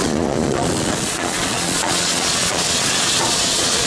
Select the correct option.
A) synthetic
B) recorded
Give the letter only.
A